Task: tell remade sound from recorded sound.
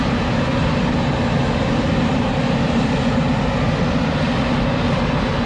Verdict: recorded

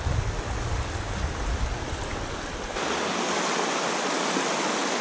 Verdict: recorded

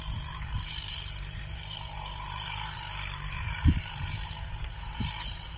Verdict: remade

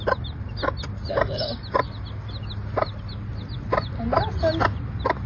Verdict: recorded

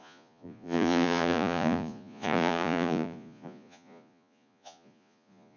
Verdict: remade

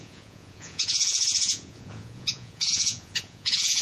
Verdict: remade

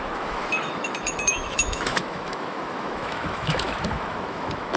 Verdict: remade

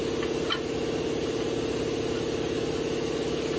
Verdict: recorded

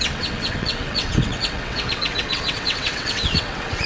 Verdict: remade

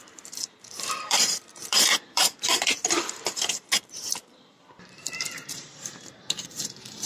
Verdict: remade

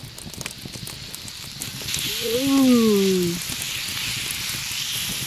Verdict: recorded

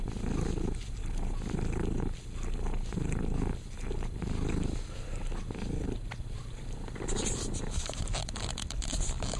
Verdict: recorded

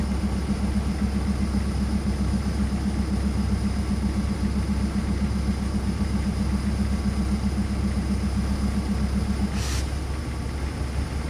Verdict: recorded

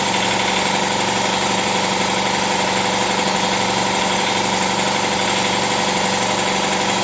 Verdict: recorded